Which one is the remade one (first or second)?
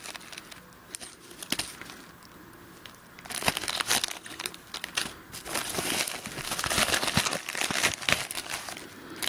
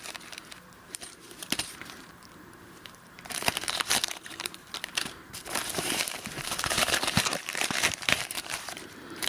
second